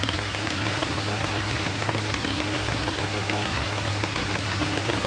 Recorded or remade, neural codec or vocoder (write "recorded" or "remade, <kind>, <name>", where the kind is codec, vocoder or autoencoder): remade, codec, SNAC